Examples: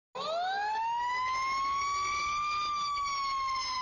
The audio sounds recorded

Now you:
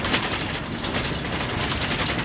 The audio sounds recorded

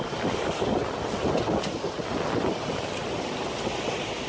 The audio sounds recorded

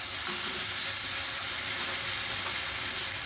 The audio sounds recorded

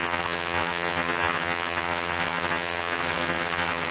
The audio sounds remade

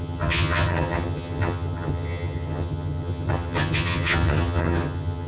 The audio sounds remade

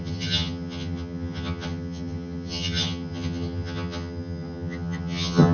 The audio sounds remade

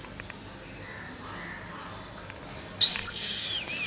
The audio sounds recorded